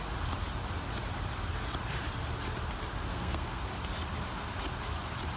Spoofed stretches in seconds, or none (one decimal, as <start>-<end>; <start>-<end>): 3.1-3.6